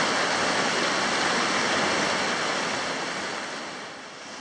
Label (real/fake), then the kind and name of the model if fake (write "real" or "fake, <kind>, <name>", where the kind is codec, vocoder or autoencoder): real